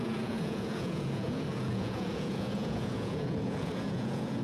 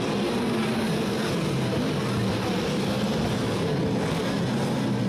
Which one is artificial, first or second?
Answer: first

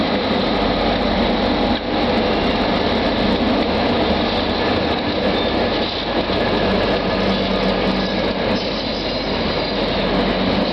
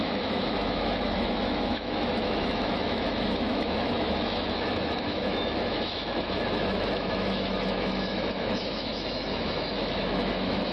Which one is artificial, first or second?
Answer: second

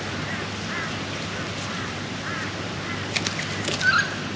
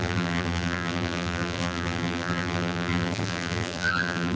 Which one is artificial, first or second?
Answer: second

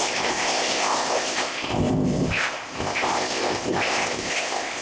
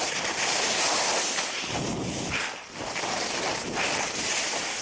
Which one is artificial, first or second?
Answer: first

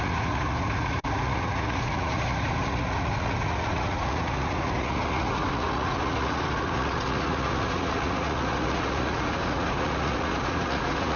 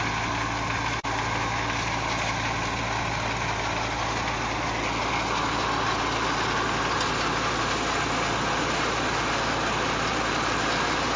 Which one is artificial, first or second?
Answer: first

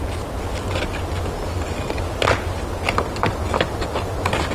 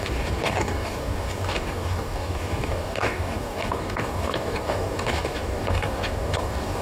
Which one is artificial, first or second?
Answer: second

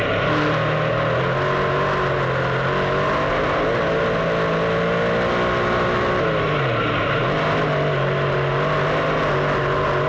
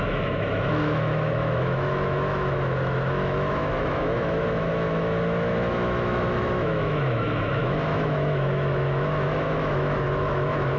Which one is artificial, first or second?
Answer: second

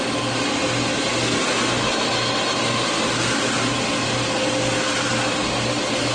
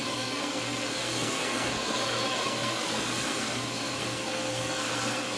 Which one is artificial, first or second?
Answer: second